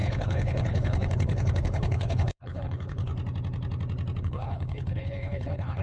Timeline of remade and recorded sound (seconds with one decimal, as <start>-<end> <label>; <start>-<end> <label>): 0.0-3.1 remade; 3.1-4.2 recorded; 4.2-5.8 remade